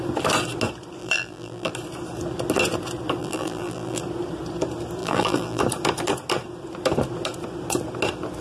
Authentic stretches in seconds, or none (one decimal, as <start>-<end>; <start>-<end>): 0.0-1.0; 1.7-3.2; 4.0-5.0; 5.6-8.4